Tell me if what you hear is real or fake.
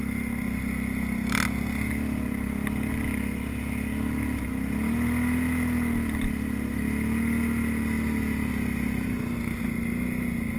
real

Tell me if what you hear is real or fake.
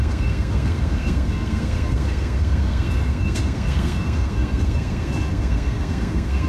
fake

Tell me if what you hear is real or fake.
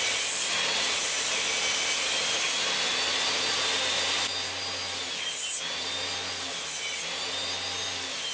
real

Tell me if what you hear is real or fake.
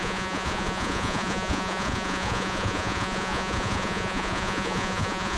fake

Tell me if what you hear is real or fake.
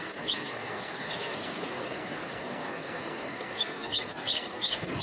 fake